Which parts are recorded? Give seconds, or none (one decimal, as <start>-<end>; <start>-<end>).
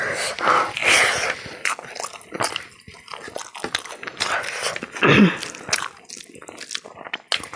0.0-7.6